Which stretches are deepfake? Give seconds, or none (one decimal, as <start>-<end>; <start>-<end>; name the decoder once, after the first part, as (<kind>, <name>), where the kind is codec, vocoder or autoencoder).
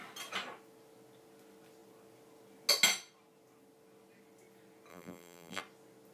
4.9-5.6 (vocoder, BigVGAN v2)